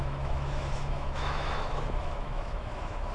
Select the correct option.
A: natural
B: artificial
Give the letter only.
B